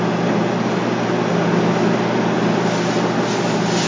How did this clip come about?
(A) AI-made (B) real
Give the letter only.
B